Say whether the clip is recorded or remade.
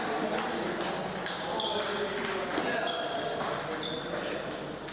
recorded